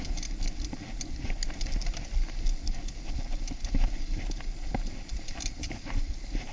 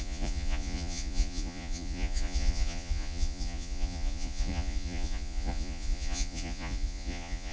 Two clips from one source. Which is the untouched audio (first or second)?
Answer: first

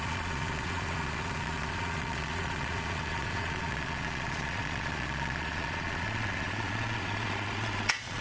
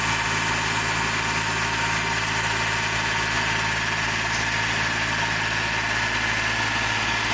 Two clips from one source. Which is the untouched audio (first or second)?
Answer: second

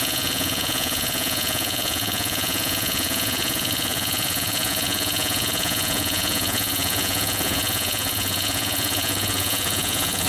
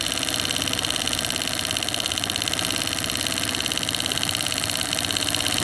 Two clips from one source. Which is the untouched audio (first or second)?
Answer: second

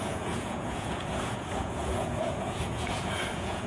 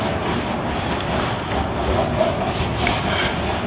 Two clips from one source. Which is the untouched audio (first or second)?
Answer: second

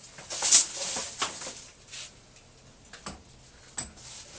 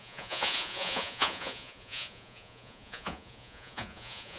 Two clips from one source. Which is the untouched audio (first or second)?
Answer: first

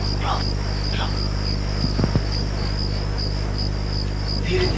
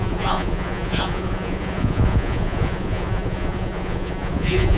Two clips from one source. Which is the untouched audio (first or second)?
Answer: first